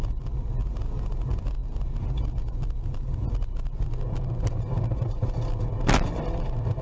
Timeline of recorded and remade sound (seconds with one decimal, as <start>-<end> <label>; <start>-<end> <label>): 0.0-6.8 recorded